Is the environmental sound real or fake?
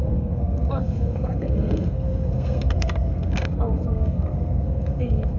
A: fake